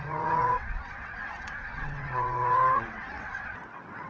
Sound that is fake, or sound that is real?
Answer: fake